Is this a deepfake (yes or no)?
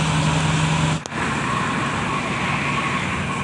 no